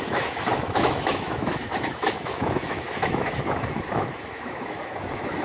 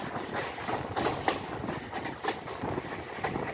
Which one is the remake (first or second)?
first